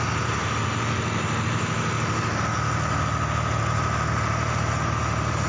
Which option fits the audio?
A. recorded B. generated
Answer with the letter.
A